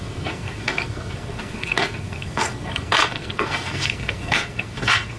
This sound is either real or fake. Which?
fake